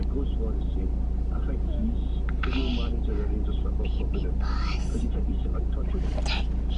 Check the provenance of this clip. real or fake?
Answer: real